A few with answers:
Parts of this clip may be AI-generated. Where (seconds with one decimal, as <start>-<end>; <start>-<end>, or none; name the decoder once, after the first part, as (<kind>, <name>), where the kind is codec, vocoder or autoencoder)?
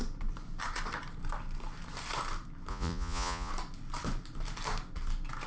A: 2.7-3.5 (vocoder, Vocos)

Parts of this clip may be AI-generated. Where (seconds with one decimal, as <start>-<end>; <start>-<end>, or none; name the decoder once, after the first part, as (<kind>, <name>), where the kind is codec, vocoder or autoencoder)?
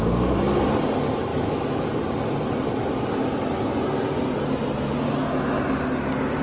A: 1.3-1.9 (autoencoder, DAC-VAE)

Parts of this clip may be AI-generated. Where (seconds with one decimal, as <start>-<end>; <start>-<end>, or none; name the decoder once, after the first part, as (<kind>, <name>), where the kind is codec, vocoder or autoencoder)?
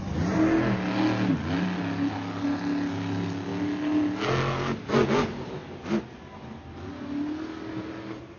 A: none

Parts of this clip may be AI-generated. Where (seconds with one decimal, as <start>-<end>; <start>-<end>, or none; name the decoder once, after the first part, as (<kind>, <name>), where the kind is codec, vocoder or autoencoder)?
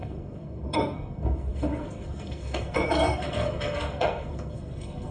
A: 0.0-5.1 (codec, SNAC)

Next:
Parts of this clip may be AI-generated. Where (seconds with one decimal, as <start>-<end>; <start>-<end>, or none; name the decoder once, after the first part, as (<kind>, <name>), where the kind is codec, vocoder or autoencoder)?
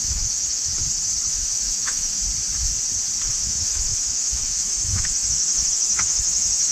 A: 0.0-0.7 (autoencoder, DAC-VAE); 1.3-2.2; 3.3-6.7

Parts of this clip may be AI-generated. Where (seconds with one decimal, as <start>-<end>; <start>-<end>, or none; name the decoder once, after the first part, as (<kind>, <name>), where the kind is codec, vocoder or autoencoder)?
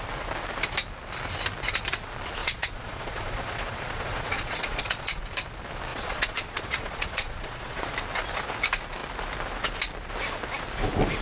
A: 2.4-5.2 (vocoder, Vocos); 5.9-7.9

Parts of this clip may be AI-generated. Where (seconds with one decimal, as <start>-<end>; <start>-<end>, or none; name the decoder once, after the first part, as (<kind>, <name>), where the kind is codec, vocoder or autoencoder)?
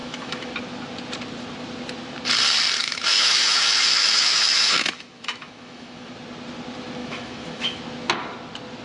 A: 0.0-0.5 (autoencoder, DAC-VAE); 2.8-6.1; 7.0-7.8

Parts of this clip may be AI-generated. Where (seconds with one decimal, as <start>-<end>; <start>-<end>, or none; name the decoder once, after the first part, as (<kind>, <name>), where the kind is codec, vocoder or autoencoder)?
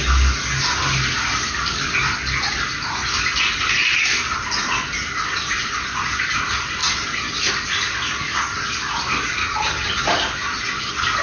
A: 9.4-10.0 (vocoder, HiFi-GAN)